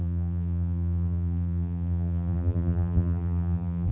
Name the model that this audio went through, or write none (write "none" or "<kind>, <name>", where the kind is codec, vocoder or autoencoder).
vocoder, BigVGAN v2